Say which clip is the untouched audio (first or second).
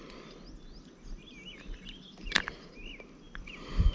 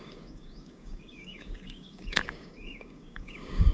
first